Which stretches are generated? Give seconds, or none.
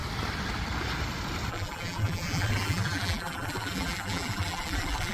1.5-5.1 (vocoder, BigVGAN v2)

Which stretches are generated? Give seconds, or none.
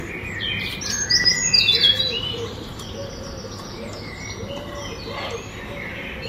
none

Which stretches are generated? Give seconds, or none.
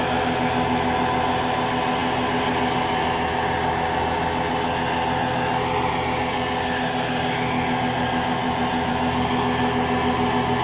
8.4-8.9 (vocoder, BigVGAN v2)